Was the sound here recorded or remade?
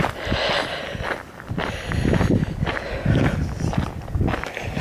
recorded